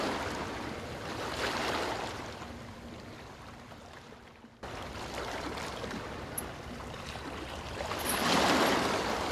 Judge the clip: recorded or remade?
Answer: recorded